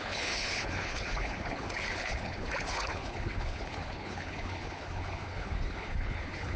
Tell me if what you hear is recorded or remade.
remade